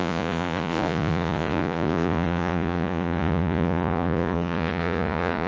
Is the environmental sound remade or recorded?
remade